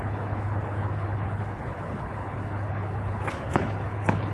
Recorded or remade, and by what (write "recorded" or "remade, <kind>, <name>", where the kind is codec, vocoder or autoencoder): remade, codec, HILCodec